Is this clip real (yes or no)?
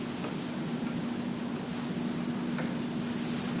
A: yes